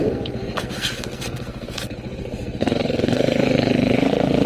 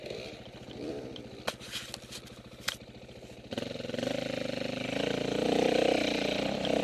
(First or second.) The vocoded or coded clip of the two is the first